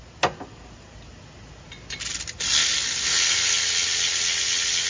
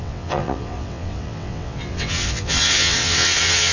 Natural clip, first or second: first